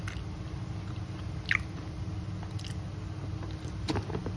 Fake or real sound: real